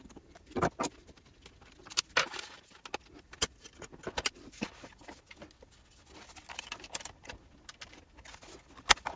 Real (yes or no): yes